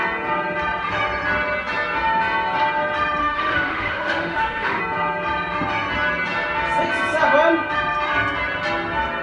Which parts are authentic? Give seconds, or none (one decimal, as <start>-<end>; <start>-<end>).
0.0-3.2; 4.8-9.2